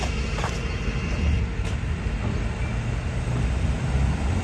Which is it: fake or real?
real